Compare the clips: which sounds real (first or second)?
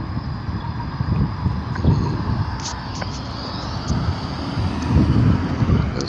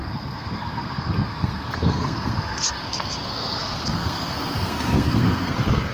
first